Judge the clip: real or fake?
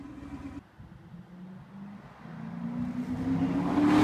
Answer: real